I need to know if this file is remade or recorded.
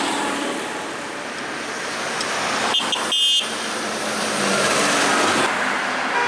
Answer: recorded